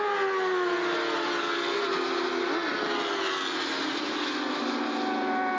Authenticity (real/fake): real